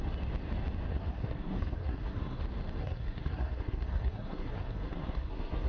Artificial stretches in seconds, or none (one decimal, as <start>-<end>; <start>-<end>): 0.9-2.4; 2.8-5.7